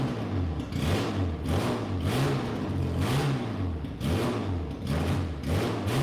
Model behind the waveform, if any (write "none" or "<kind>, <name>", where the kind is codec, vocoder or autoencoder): none